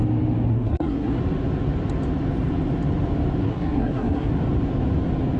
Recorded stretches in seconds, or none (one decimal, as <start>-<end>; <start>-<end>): 0.0-0.5; 1.2-3.4; 4.3-5.4